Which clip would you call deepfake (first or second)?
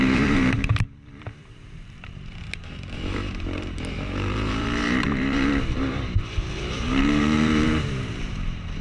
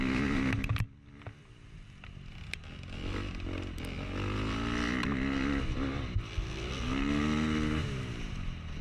first